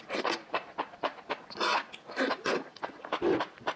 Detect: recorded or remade recorded